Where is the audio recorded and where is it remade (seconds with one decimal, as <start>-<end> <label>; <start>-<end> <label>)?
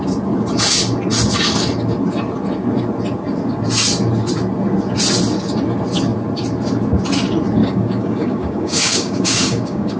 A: 0.0-7.6 recorded; 7.6-10.0 remade